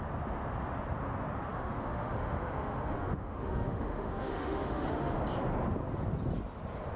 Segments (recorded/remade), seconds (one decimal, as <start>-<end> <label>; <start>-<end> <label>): 0.0-1.5 recorded; 1.5-5.2 remade; 5.2-7.0 recorded